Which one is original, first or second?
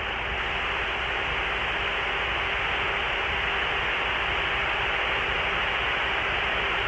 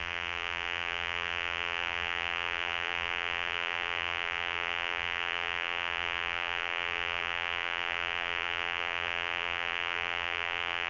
first